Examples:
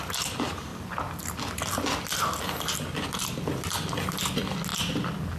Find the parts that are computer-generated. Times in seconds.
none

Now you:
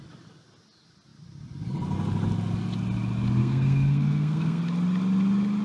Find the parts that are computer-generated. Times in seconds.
3.4-4.6 (codec, SNAC)